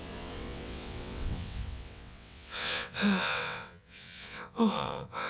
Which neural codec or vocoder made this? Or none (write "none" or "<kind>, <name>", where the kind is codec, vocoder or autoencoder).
vocoder, WaveNeXt